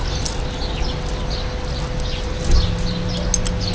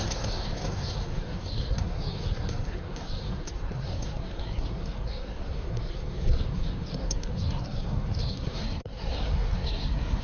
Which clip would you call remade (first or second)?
second